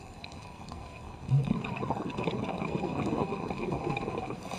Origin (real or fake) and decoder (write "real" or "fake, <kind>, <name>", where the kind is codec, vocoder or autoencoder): fake, codec, SNAC